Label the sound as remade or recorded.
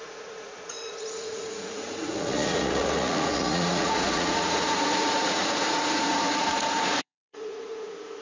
remade